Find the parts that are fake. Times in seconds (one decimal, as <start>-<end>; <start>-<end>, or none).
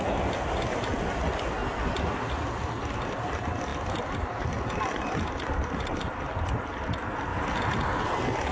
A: none